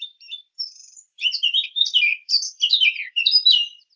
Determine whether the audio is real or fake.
fake